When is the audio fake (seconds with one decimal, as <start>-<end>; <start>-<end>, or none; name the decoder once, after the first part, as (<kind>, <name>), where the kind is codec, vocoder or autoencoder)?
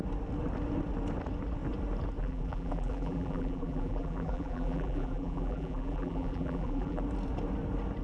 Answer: 2.2-7.0 (vocoder, BigVGAN v2)